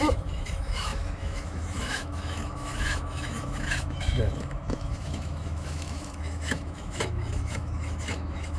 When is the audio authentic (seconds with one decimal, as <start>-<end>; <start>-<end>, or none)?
none